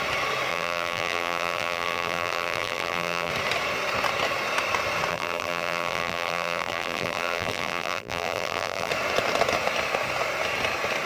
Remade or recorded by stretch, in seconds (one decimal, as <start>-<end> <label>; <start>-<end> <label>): 0.0-0.5 recorded; 0.5-3.3 remade; 3.3-5.1 recorded; 5.1-8.9 remade; 8.9-11.1 recorded